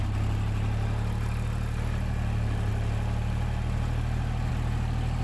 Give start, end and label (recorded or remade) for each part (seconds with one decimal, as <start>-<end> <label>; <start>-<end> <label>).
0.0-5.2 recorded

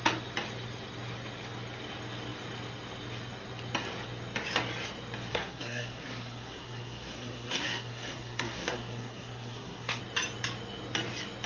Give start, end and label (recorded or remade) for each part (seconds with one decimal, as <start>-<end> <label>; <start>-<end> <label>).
0.0-5.3 recorded; 5.3-10.0 remade; 10.0-11.5 recorded

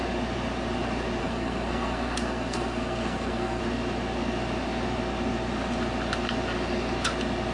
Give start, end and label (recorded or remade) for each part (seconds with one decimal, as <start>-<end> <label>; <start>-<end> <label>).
0.0-1.2 recorded; 1.2-3.6 remade; 3.6-7.5 recorded

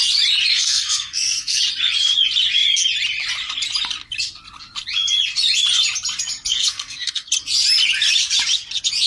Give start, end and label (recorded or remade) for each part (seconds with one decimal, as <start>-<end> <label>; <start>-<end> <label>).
0.0-0.5 recorded; 0.5-1.6 remade; 1.6-6.5 recorded; 6.5-7.3 remade; 7.3-9.1 recorded

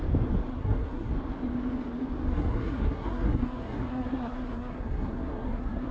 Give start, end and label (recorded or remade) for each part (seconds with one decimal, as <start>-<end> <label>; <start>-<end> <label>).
0.0-0.5 recorded; 0.5-1.1 remade; 1.1-2.3 recorded; 2.3-5.9 remade